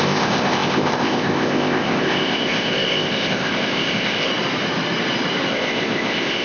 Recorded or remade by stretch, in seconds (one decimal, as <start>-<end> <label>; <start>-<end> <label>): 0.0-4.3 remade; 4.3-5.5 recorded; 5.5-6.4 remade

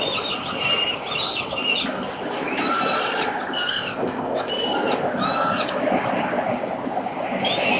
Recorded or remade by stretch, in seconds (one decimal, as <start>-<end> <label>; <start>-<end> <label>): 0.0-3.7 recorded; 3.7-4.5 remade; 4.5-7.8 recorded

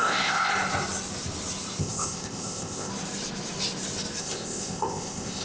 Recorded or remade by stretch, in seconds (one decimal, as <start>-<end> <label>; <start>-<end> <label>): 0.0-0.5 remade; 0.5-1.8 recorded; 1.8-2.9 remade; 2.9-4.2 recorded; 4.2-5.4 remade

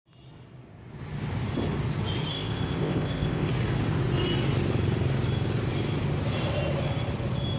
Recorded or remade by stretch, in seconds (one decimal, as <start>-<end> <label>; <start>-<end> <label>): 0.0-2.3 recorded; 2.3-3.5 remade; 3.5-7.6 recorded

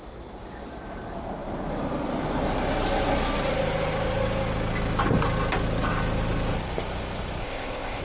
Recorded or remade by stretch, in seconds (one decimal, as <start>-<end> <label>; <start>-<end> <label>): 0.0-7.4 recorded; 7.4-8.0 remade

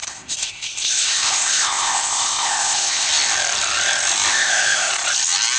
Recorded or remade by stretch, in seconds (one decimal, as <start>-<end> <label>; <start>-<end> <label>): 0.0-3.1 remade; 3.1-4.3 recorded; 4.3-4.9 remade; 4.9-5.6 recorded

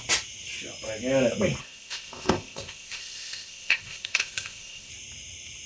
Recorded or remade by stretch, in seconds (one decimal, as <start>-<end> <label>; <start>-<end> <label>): 0.0-1.6 recorded; 1.6-4.9 remade; 4.9-5.7 recorded

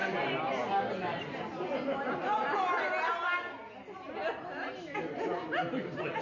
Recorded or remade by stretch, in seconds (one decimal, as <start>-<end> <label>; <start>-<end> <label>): 0.0-6.2 recorded